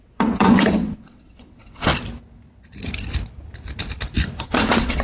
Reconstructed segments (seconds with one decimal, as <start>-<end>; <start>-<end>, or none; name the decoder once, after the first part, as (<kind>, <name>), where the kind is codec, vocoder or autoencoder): 0.0-1.9 (vocoder, WaveNeXt); 4.4-5.0